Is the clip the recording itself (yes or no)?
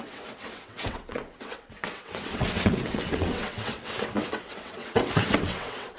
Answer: no